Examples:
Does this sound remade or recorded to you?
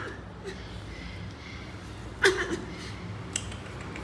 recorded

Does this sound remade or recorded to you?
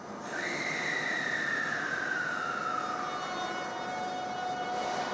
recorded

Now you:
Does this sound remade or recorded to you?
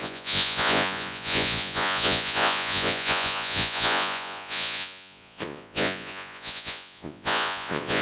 remade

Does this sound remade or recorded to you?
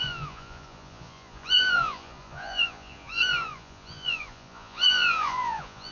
remade